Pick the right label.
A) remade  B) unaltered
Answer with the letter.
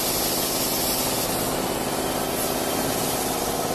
B